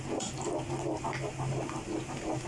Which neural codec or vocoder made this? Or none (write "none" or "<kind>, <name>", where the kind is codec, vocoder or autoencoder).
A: none